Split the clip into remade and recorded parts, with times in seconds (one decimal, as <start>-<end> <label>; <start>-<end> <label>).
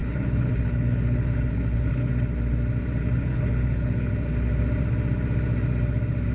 0.0-2.1 remade; 2.1-3.0 recorded; 3.0-4.1 remade; 4.1-6.3 recorded